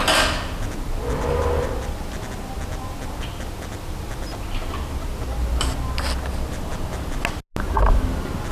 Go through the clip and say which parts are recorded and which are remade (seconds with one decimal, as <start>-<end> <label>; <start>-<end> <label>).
0.0-8.5 recorded